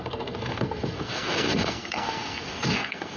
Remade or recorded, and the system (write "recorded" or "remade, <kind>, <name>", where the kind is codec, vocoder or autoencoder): remade, codec, SNAC